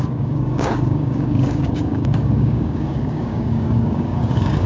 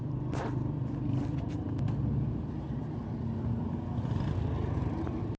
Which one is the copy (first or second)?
first